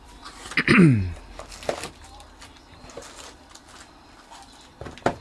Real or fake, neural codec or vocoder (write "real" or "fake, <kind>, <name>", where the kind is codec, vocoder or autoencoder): real